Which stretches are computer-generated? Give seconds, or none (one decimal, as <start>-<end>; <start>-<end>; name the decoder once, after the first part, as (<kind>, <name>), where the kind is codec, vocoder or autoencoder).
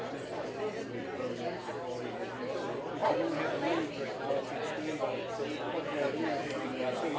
none